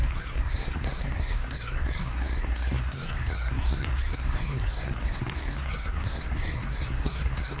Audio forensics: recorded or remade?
remade